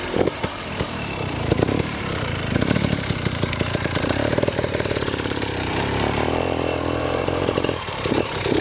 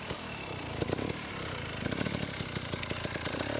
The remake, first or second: first